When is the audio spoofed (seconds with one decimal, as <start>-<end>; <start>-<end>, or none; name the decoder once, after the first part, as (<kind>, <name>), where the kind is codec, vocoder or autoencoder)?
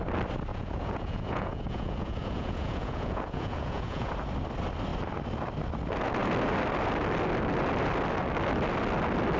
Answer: 0.5-4.1 (vocoder, Vocos)